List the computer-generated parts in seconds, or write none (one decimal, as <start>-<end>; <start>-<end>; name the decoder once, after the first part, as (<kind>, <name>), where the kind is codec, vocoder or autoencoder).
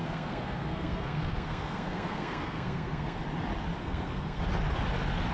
0.0-3.2 (codec, SNAC); 3.8-4.4